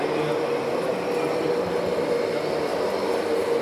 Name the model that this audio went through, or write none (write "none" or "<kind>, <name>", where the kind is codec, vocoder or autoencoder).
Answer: none